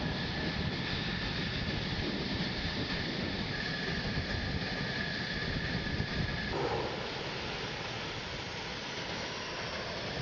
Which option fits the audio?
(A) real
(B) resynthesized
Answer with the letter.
A